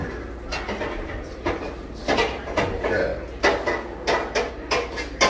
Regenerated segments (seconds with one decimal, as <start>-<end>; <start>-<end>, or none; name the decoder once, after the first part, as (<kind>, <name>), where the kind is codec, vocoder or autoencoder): 0.7-3.1 (vocoder, BigVGAN v2); 4.5-5.3